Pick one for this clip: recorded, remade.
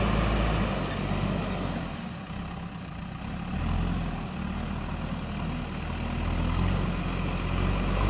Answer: recorded